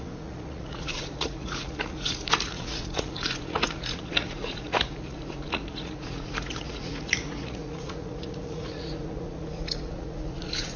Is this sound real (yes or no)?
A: no